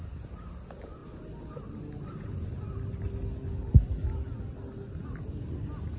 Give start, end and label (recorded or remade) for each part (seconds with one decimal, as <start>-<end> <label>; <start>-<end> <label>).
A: 0.0-6.0 recorded